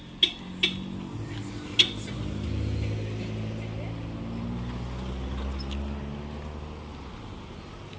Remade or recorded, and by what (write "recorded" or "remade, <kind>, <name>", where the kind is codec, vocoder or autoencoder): recorded